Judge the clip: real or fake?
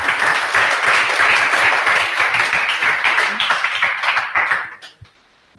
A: real